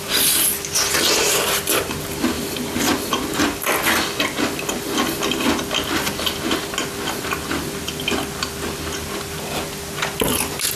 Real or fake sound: real